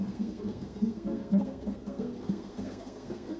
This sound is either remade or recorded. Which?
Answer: remade